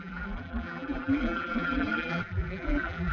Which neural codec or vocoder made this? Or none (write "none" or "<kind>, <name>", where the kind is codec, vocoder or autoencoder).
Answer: vocoder, BigVGAN v2